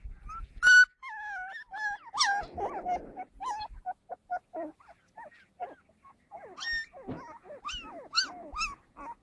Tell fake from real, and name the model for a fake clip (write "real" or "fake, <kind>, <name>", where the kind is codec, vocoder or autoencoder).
real